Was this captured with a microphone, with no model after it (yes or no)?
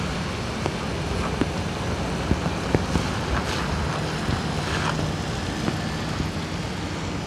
yes